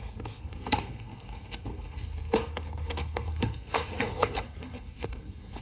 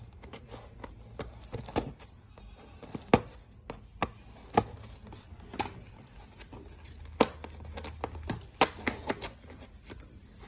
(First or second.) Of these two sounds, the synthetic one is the first